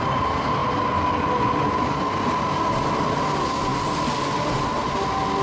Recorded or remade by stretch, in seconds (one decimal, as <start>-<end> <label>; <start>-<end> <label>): 0.0-5.4 recorded